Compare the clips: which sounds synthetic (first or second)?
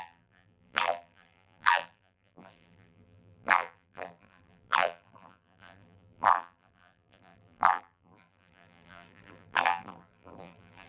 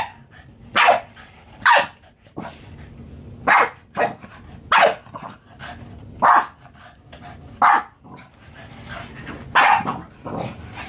first